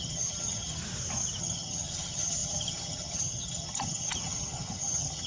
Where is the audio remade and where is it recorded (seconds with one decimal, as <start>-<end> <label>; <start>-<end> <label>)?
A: 0.0-0.8 remade; 0.8-1.4 recorded; 1.4-5.3 remade